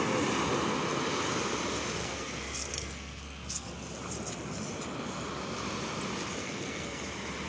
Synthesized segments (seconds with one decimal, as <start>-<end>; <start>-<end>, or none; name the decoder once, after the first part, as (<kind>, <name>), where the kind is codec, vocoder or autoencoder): 2.0-3.7 (codec, SNAC); 6.4-7.0